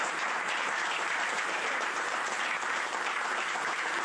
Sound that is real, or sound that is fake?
fake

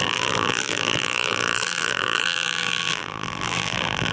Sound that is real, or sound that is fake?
fake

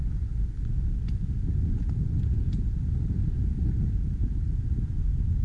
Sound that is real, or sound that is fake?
real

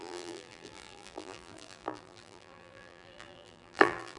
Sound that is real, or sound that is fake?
fake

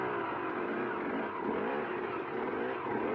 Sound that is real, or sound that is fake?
real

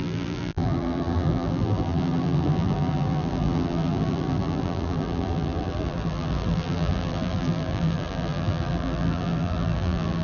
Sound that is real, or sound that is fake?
fake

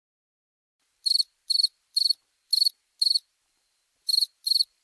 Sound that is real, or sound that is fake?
fake